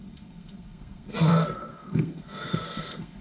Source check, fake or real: fake